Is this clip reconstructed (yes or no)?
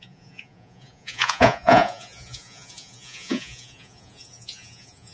yes